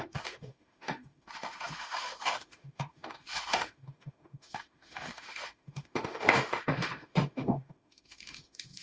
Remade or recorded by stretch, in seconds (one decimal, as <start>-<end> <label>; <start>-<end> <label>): 0.0-8.8 remade